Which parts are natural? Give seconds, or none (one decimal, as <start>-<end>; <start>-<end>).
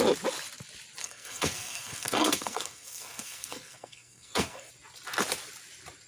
0.0-1.0; 4.7-6.1